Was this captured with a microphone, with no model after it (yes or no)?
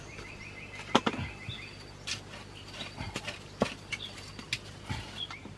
yes